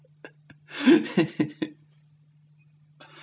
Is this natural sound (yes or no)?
yes